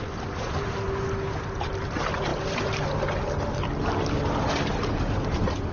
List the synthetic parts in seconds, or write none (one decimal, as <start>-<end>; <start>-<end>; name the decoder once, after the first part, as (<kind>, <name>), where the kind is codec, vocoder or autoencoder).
none